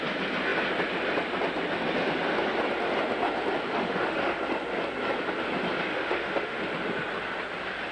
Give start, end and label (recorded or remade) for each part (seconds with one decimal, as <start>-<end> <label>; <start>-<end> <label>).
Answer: 0.0-3.7 recorded; 3.7-4.4 remade; 4.4-5.9 recorded; 5.9-6.6 remade; 6.6-7.9 recorded